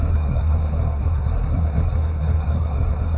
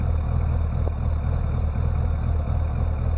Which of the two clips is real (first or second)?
second